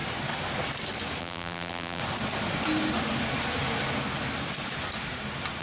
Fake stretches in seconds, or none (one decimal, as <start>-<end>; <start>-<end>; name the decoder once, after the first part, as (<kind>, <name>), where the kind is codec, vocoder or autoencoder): 1.2-2.0 (vocoder, BigVGAN v2)